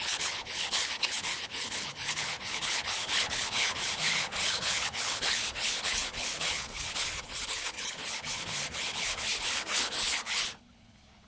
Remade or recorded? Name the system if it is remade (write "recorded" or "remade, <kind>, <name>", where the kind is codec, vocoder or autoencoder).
remade, codec, HILCodec